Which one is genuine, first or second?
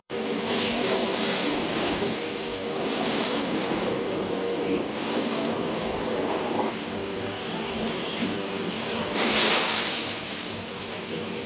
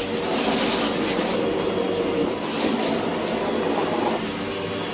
second